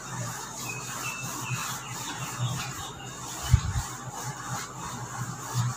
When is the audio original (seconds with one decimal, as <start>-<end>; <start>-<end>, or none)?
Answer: 0.0-5.8